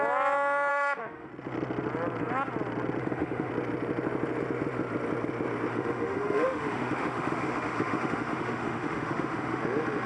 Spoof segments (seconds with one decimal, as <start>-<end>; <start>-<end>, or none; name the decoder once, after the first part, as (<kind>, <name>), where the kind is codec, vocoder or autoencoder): 0.7-1.3 (autoencoder, DAC-VAE); 3.0-3.5; 5.7-9.6